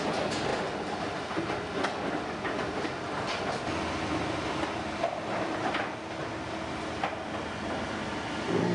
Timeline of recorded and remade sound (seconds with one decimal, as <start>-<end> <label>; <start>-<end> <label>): 0.0-8.7 recorded